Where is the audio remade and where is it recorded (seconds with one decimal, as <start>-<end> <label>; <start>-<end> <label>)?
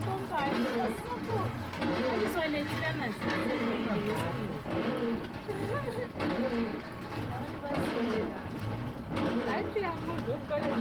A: 0.0-6.7 recorded; 6.7-8.6 remade; 8.6-10.8 recorded